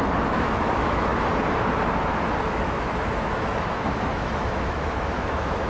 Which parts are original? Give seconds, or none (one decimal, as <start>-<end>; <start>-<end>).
1.1-2.5